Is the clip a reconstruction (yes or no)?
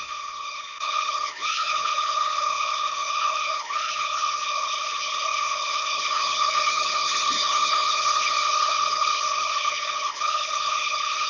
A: yes